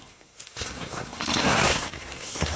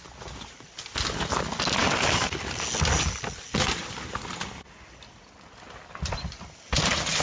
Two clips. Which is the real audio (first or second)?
second